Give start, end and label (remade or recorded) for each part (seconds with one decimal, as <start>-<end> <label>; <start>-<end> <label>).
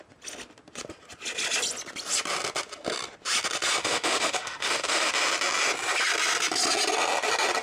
0.0-3.8 recorded; 3.8-5.1 remade; 5.1-7.6 recorded